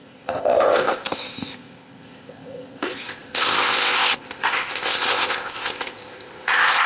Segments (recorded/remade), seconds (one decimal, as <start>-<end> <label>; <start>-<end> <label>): 0.0-6.9 remade

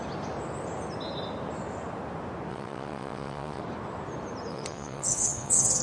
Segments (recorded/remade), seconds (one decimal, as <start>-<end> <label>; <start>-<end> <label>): 0.0-2.5 recorded; 2.5-3.6 remade; 3.6-4.5 recorded; 4.5-5.8 remade

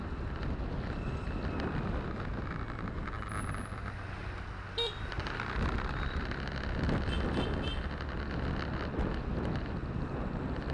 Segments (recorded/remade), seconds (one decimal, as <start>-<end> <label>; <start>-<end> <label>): 0.0-10.7 recorded

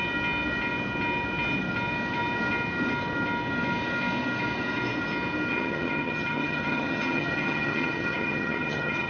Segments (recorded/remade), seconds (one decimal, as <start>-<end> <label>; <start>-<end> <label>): 0.0-5.5 recorded; 5.5-9.1 remade

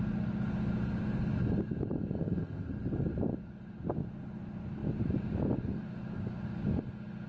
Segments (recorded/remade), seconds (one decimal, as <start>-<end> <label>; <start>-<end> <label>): 0.0-2.2 recorded; 2.2-2.7 remade; 2.7-7.3 recorded

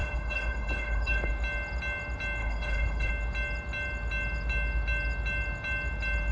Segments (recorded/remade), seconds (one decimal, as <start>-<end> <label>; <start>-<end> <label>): 0.0-1.3 remade; 1.3-2.4 recorded; 2.4-3.1 remade; 3.1-6.3 recorded